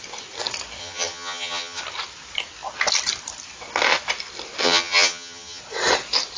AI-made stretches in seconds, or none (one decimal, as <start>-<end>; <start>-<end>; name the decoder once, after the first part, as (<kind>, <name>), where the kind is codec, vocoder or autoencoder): 0.8-1.8 (vocoder, HiFi-GAN); 4.6-5.6